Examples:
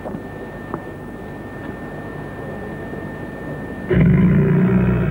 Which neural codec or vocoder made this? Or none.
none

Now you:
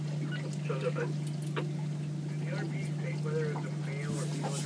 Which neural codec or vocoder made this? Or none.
none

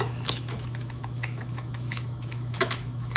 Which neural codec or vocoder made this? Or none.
autoencoder, DAC-VAE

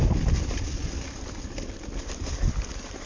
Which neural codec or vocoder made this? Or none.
vocoder, BigVGAN v2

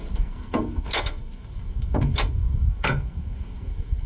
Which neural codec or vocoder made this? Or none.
codec, SNAC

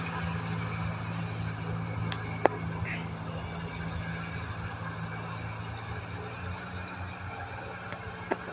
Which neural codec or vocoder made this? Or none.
none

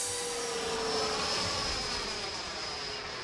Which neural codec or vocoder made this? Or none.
none